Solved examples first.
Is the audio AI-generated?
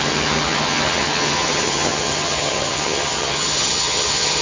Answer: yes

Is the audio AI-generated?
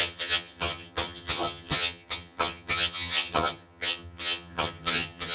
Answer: yes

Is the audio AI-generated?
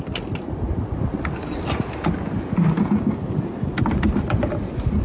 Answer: no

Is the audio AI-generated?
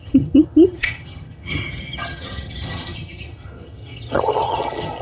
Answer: yes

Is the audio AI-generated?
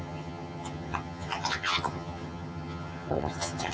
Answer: yes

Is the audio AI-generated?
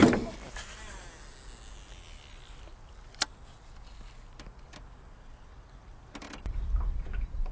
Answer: no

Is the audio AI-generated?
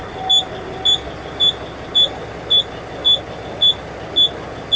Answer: no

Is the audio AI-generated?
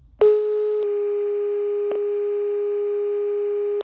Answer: no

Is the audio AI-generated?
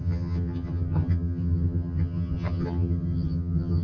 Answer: yes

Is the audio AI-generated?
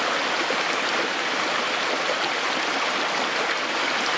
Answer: no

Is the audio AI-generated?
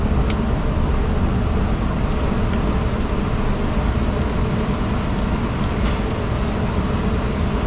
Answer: no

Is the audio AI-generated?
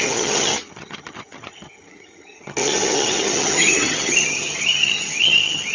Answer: yes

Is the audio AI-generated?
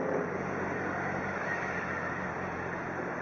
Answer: no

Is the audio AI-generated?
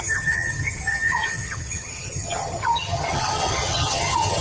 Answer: yes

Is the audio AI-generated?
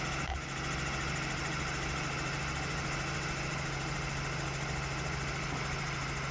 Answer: no